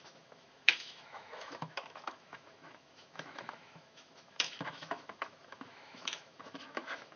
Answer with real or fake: fake